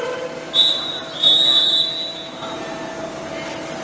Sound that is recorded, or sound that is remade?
recorded